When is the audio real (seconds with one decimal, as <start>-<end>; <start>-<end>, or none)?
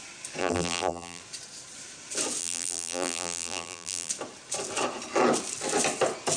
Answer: 0.0-0.4; 1.2-2.4; 4.1-6.4